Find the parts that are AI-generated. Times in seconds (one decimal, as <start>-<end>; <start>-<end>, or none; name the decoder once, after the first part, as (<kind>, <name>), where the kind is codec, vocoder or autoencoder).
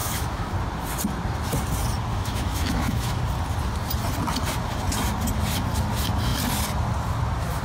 0.0-0.5 (autoencoder, DAC-VAE); 2.1-3.2